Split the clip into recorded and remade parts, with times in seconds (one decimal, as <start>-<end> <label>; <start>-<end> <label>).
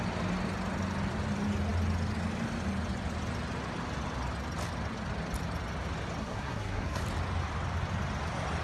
0.0-6.2 recorded; 6.2-7.0 remade; 7.0-8.6 recorded